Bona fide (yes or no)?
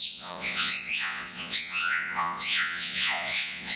no